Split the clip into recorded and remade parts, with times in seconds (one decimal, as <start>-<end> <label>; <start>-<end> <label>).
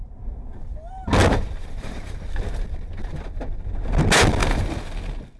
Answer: 0.0-0.7 remade; 0.7-1.2 recorded; 1.2-2.2 remade; 2.2-5.4 recorded